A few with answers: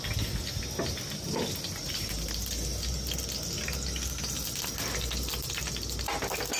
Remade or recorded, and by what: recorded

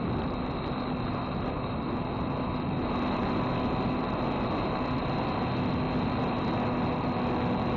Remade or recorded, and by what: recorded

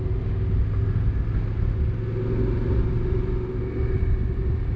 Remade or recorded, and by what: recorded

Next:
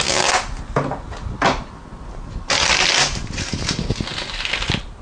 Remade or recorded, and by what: recorded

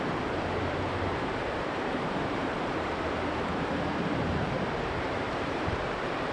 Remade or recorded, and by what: remade, vocoder, BigVGAN v2